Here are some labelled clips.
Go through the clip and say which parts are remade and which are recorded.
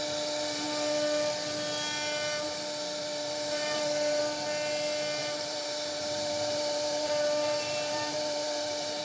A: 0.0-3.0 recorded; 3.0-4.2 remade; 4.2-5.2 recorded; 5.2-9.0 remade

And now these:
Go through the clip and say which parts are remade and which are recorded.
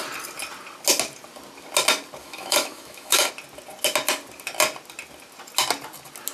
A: 0.0-2.2 recorded; 2.2-3.3 remade; 3.3-6.3 recorded